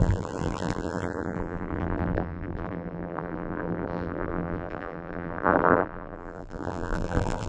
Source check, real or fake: fake